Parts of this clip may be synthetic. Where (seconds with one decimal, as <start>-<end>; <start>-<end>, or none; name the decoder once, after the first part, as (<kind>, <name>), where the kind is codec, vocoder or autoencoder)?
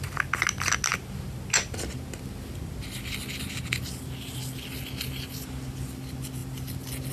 none